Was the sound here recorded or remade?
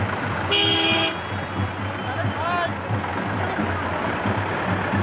recorded